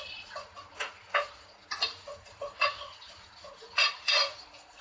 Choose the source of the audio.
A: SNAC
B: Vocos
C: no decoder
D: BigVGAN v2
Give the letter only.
B